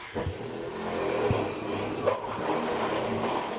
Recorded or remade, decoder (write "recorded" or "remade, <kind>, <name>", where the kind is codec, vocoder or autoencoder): recorded